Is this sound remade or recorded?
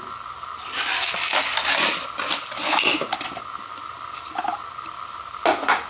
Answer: recorded